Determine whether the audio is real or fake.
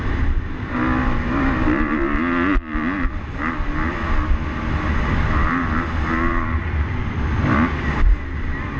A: real